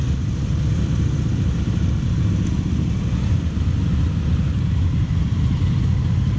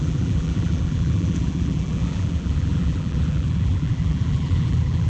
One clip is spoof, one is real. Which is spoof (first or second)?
second